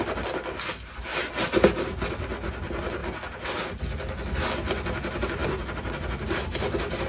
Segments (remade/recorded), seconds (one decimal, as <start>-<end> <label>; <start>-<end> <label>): 0.0-7.1 recorded